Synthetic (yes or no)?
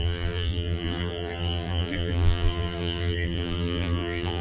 yes